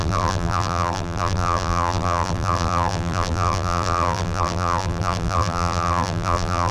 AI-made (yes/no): yes